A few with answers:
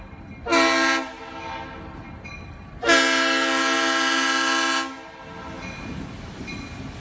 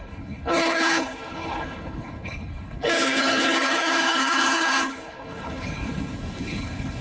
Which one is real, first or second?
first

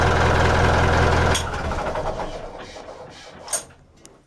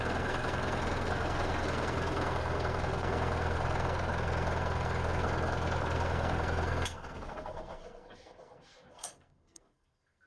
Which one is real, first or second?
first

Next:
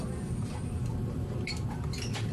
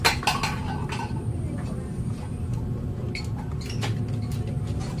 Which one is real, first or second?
second